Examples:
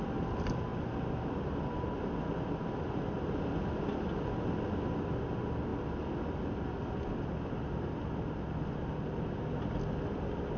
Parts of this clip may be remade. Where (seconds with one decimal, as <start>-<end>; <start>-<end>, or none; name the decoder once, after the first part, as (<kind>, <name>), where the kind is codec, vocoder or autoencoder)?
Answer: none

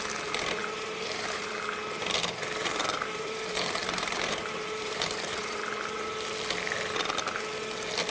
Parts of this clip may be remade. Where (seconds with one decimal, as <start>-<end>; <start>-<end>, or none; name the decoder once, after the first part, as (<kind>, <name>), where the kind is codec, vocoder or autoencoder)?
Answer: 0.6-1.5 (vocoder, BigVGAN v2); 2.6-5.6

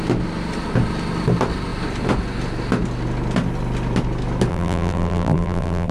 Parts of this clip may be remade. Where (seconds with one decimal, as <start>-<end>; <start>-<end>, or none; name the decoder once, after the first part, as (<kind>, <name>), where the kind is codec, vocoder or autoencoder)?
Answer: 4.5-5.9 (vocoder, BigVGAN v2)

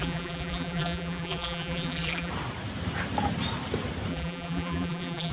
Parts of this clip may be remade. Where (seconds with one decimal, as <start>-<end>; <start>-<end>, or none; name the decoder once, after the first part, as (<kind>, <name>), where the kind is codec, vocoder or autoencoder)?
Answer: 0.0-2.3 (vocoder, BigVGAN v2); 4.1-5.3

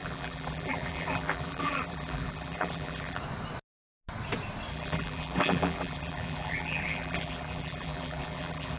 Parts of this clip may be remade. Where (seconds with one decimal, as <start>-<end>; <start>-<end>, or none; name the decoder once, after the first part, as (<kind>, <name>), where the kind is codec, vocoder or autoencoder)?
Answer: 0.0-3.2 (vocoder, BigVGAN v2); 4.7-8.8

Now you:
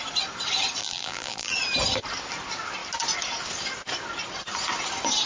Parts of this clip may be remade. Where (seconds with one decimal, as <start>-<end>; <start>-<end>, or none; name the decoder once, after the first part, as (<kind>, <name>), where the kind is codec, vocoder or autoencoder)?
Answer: 0.8-1.5 (vocoder, BigVGAN v2)

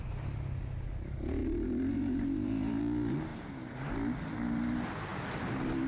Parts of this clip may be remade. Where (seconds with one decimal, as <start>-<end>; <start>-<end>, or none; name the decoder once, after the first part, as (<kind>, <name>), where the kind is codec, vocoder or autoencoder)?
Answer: 1.4-2.8 (vocoder, BigVGAN v2); 3.3-3.9